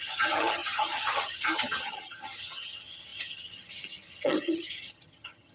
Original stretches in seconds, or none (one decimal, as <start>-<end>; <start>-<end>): none